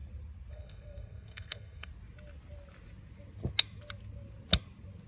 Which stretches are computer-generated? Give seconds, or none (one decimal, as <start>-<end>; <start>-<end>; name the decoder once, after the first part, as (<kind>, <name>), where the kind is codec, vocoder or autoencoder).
0.5-1.9 (codec, SNAC)